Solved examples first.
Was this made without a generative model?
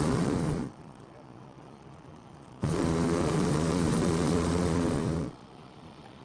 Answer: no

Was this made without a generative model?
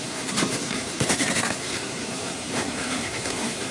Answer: no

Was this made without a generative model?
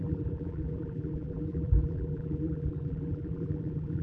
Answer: no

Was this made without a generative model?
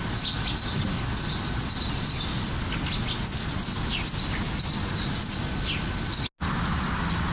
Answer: yes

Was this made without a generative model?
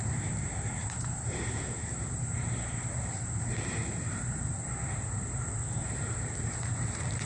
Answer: no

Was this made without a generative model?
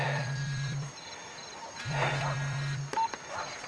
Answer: no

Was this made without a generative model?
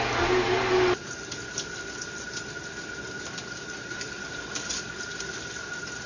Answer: yes